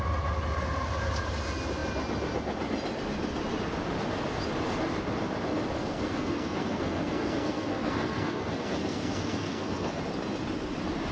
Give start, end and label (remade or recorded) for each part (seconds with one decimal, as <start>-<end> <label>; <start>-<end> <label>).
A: 0.0-5.8 recorded; 5.8-10.0 remade; 10.0-11.1 recorded